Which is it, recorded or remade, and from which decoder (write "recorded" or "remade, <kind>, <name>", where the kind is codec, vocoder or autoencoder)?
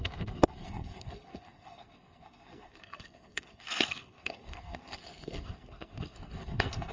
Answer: remade, codec, SNAC